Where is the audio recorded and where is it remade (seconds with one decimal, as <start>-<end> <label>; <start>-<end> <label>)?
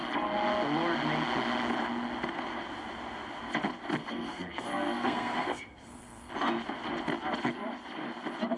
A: 0.0-4.0 recorded; 4.0-6.3 remade; 6.3-8.6 recorded